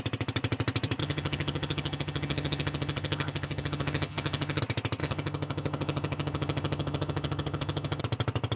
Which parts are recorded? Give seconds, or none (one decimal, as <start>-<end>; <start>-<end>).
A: 0.0-1.0; 4.6-5.0; 8.0-8.6